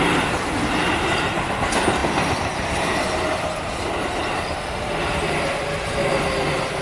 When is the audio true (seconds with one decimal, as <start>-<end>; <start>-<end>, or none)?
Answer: 0.0-6.8